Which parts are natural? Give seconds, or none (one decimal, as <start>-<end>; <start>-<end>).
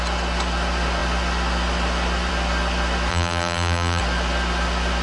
0.0-3.1; 4.0-5.0